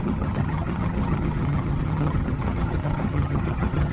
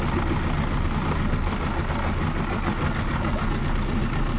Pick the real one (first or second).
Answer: second